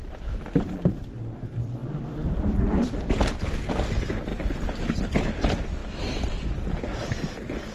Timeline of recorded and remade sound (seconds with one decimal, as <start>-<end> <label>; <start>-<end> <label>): 0.0-7.7 recorded